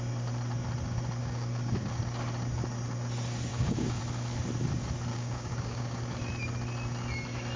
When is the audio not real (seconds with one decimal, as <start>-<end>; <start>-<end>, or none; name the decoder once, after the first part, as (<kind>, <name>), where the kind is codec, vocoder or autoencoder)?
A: 1.2-2.0 (codec, DAC); 3.5-4.0; 5.1-6.0